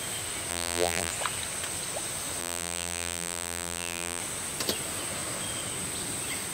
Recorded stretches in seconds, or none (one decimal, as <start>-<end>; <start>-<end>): 0.0-0.5; 1.1-2.4; 4.2-6.5